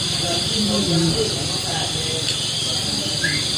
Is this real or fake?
fake